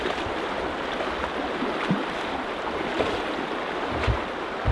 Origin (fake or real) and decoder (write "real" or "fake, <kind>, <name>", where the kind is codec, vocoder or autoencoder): fake, vocoder, BigVGAN v2